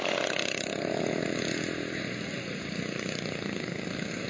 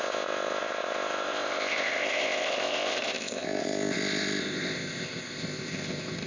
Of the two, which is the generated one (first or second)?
second